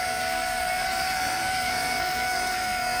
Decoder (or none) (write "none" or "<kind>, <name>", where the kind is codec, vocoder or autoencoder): codec, SNAC